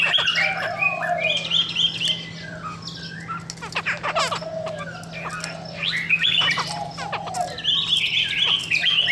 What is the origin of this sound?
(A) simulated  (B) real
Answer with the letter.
B